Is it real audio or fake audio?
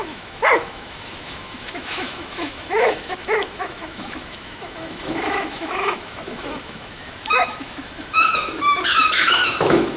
fake